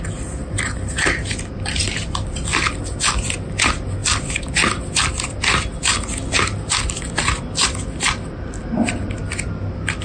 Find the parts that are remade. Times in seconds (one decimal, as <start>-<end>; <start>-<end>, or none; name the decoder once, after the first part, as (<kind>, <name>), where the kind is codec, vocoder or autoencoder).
none